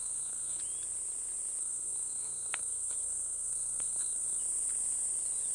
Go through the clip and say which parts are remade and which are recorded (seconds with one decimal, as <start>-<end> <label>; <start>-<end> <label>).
0.0-0.6 remade; 0.6-1.6 recorded; 1.6-4.4 remade; 4.4-5.5 recorded